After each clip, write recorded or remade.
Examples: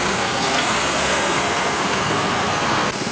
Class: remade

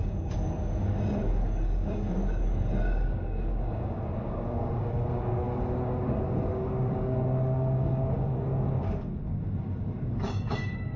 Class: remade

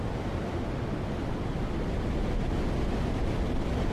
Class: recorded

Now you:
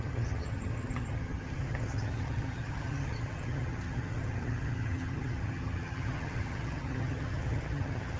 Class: remade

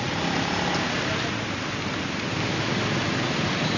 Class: recorded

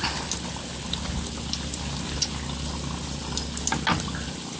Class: recorded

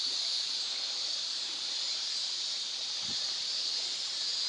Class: recorded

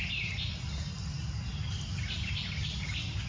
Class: recorded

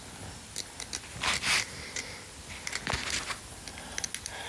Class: recorded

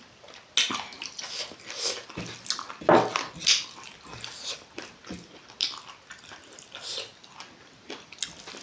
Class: recorded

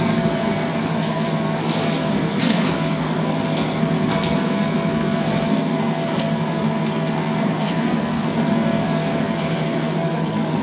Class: remade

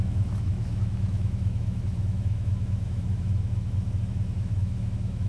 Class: remade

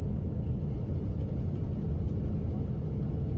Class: remade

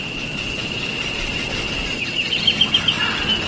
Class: recorded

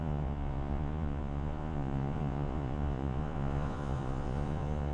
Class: remade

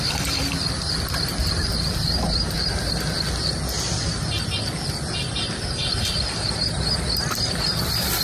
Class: remade